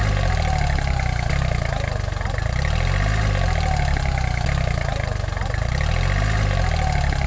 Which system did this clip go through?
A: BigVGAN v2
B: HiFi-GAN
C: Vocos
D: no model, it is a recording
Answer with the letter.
D